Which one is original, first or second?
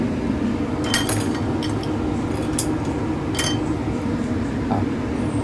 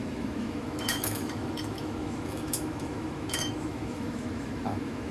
first